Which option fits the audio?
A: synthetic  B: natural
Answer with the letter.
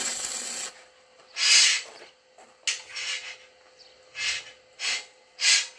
B